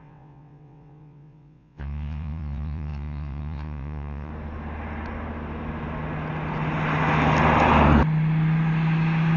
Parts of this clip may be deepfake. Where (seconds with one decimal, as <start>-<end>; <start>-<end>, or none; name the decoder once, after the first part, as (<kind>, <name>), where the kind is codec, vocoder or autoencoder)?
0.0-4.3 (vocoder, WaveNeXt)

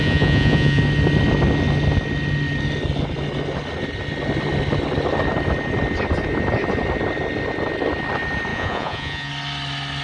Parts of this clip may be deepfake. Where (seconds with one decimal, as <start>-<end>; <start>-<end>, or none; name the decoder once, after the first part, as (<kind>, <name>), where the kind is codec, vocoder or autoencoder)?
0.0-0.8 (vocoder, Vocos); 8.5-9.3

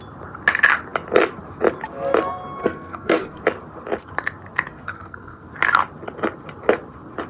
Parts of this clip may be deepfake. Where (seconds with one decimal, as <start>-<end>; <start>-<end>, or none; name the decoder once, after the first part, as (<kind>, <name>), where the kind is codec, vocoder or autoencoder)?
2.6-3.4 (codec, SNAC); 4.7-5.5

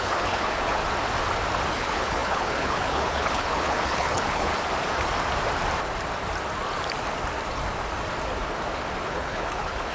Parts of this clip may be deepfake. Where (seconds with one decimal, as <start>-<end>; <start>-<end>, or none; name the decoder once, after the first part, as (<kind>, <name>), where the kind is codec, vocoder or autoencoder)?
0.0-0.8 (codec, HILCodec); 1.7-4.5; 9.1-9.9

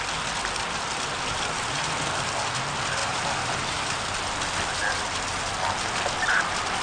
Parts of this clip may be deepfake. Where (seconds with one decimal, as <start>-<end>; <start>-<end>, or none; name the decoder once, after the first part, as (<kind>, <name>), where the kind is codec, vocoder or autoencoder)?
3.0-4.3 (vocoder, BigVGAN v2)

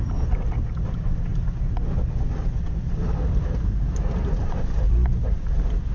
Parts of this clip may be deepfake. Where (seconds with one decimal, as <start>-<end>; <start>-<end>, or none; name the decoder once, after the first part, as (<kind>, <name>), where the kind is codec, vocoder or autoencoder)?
none

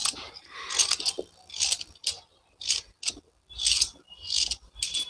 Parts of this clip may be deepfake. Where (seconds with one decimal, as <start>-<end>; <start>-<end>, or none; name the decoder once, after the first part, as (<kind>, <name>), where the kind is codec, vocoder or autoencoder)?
none